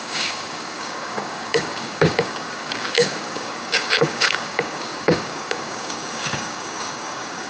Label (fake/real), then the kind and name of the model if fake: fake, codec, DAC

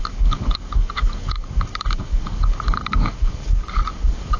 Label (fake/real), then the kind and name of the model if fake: fake, codec, DAC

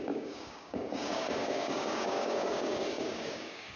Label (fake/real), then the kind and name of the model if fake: fake, codec, DAC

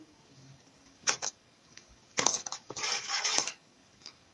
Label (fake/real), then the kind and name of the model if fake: fake, codec, DAC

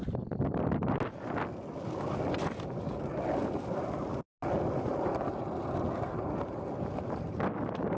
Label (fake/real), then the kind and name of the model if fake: real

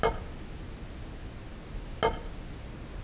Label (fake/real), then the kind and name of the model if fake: real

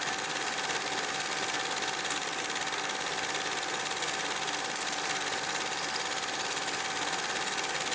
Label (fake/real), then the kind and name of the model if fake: real